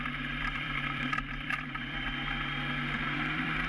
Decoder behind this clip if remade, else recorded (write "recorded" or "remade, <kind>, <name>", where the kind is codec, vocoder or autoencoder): remade, vocoder, BigVGAN v2